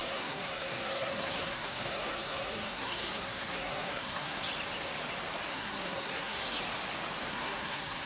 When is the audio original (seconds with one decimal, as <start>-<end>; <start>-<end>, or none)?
4.5-5.5; 6.6-7.3